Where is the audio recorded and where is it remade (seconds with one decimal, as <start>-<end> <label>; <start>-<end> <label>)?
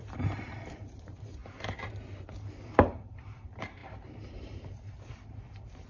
0.0-1.4 remade; 1.4-2.5 recorded; 2.5-5.9 remade